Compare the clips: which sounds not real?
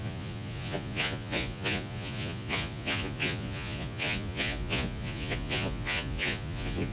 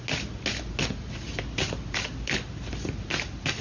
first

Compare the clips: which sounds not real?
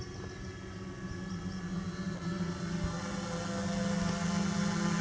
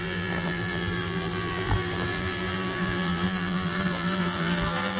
second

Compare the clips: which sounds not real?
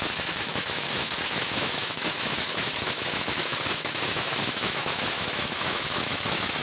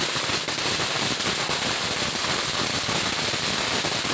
first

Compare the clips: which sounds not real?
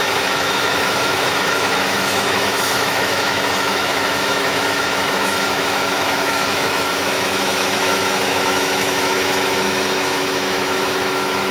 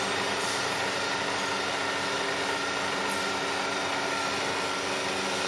first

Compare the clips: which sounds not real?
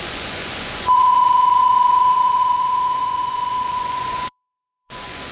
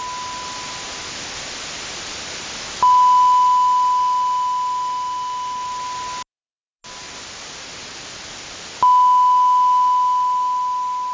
first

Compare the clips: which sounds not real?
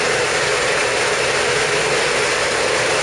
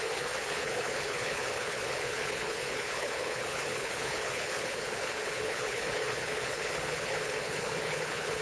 second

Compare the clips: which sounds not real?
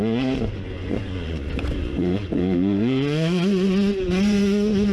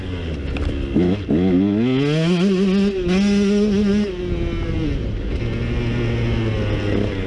first